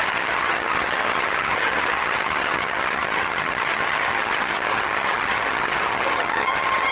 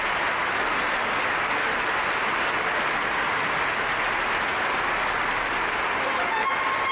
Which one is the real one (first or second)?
second